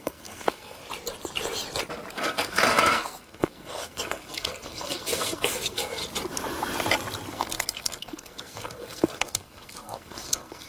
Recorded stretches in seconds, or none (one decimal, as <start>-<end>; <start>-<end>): 0.8-2.1; 6.0-7.3